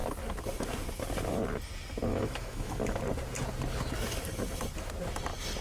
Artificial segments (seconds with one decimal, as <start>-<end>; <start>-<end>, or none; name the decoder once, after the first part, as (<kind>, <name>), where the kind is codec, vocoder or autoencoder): 2.1-3.0 (autoencoder, DAC-VAE)